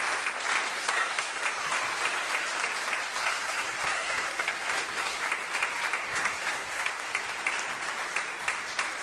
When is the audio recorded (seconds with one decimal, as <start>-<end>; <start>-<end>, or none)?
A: 0.0-0.8; 1.4-3.2; 5.2-6.0; 6.9-9.0